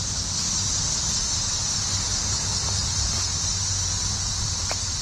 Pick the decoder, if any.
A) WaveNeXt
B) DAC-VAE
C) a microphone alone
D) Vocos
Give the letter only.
C